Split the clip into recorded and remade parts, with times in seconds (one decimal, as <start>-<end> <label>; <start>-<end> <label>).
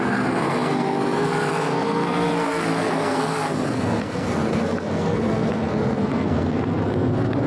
0.0-7.5 remade